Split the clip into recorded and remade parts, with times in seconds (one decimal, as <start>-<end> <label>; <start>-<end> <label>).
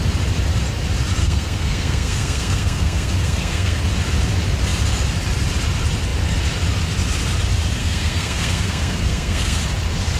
0.0-1.2 recorded; 1.2-3.8 remade; 3.8-7.8 recorded; 7.8-9.6 remade; 9.6-10.2 recorded